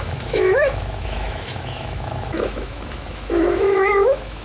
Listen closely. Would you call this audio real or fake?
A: fake